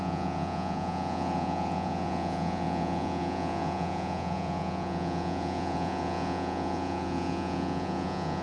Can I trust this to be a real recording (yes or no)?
no